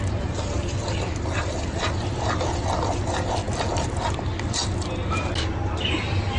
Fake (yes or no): no